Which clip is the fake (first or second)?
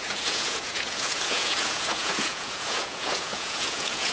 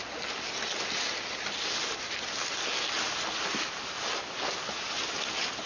first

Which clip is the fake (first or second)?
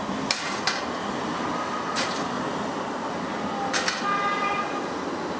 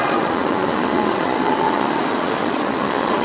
second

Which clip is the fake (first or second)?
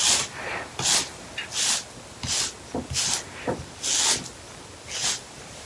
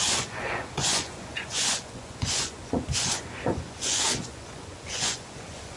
second